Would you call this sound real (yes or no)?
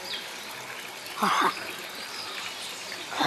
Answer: yes